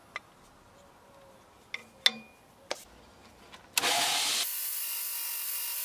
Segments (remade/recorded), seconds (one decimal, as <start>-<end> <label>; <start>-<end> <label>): 0.0-5.8 recorded